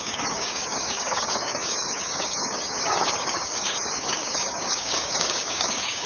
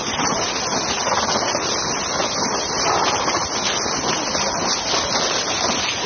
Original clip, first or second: second